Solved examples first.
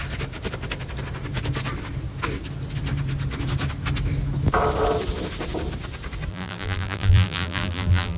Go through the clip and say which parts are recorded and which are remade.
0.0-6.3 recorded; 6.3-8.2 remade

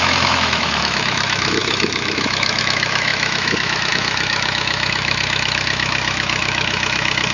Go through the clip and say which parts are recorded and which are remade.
0.0-7.3 remade

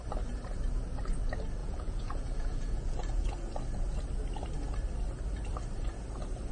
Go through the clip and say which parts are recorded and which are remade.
0.0-1.6 recorded; 1.6-3.5 remade; 3.5-6.5 recorded

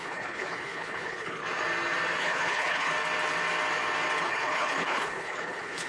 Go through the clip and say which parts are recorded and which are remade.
0.0-1.4 remade; 1.4-2.2 recorded; 2.2-2.9 remade; 2.9-4.2 recorded; 4.2-5.9 remade

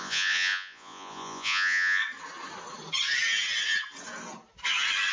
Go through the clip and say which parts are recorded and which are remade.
0.0-2.0 remade; 2.0-5.1 recorded

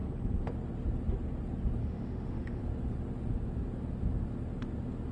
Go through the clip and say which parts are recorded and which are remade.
0.0-1.8 recorded; 1.8-2.6 remade; 2.6-5.1 recorded